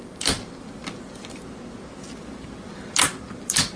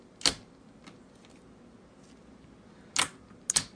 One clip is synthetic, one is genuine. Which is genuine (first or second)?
second